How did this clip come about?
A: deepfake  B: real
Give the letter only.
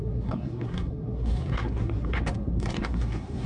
A